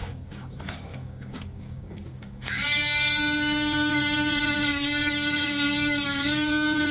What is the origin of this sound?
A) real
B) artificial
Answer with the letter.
B